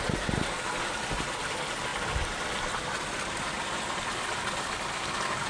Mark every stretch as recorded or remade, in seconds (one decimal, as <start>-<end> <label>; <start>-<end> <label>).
0.0-5.5 recorded